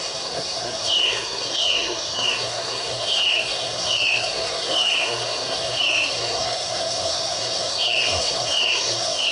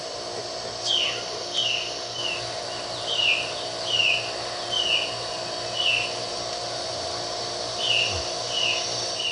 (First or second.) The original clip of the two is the second